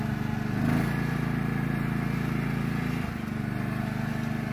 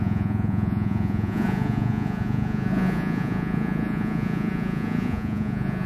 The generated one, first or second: second